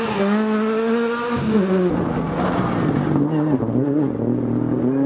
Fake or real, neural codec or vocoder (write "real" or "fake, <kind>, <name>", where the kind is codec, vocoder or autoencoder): real